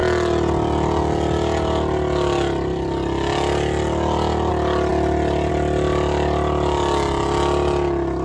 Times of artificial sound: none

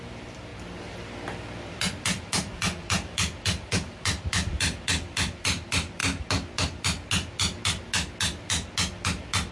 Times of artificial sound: 0.0-0.5; 1.6-6.0

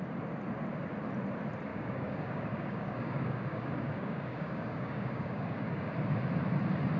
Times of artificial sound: 1.7-5.9

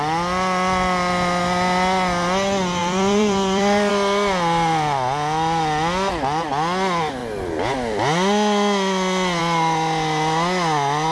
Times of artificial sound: 2.8-3.9

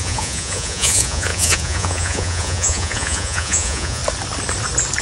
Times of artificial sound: 0.0-4.0

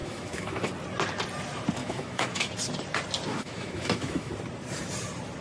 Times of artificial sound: 0.0-0.7; 1.8-2.5; 3.3-4.3

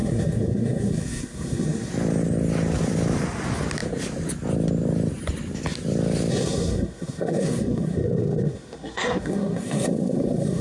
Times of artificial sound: 0.0-1.9; 6.3-10.6

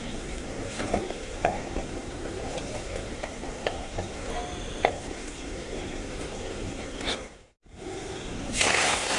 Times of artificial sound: 0.0-4.3; 4.9-9.2